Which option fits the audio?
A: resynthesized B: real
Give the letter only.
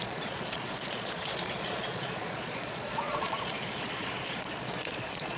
A